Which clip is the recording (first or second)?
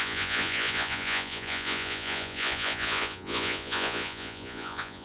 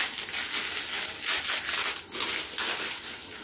second